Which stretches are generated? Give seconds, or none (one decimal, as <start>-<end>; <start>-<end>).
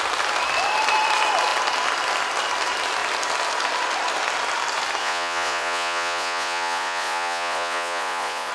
5.0-8.5